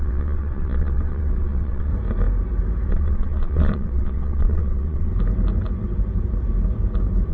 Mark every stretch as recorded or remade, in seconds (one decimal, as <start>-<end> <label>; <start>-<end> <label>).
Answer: 0.0-1.9 remade; 1.9-2.9 recorded; 2.9-5.1 remade; 5.1-7.3 recorded